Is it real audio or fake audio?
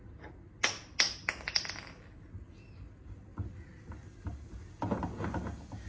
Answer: real